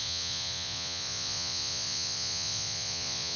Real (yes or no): no